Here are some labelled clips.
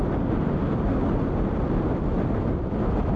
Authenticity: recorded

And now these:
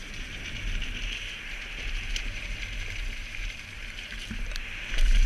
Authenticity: remade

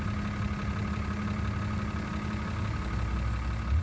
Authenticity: recorded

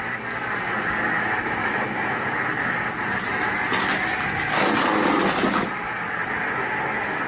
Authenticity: recorded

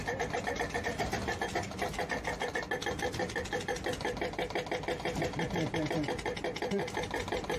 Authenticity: recorded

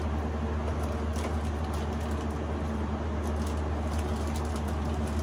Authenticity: recorded